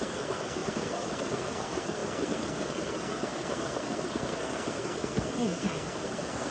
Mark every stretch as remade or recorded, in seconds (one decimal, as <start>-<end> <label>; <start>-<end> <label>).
0.0-6.5 remade